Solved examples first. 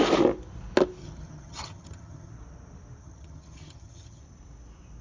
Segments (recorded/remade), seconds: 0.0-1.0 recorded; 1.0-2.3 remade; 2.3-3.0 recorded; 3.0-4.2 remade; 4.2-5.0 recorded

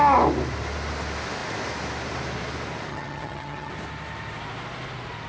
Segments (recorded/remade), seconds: 0.0-2.9 recorded; 2.9-3.7 remade; 3.7-5.3 recorded